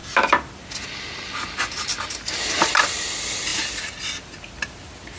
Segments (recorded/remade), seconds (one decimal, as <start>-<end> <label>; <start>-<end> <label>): 0.0-5.2 recorded